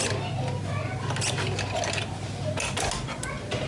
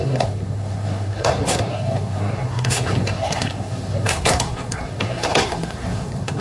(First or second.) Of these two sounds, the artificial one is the second